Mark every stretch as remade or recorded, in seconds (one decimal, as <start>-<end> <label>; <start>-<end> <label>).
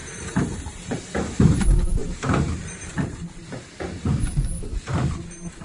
0.0-1.0 remade; 1.0-2.0 recorded; 2.0-5.1 remade; 5.1-5.6 recorded